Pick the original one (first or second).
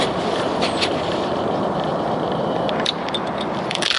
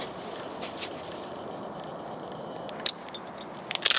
second